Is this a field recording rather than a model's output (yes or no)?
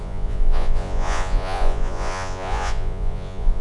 no